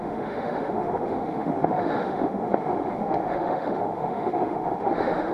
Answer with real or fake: fake